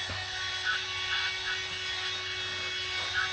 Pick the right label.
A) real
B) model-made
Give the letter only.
A